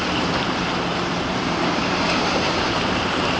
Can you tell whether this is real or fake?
fake